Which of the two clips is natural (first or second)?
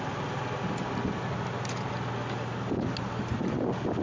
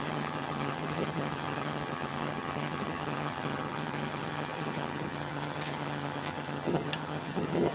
first